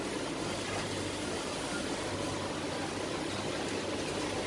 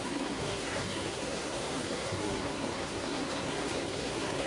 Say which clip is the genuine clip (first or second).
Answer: first